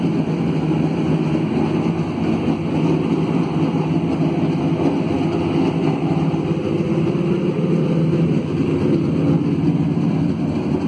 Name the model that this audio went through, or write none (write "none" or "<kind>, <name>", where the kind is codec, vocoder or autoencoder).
none